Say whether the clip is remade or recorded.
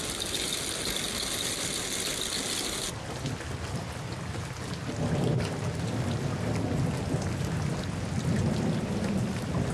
recorded